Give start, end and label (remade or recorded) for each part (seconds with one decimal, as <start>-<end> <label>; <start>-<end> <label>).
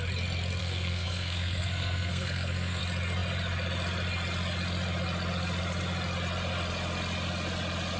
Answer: 0.0-0.6 recorded; 0.6-2.8 remade; 2.8-8.0 recorded